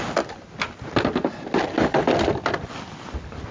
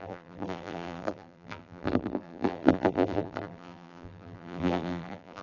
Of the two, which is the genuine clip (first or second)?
first